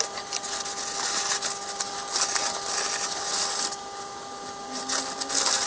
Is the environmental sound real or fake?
real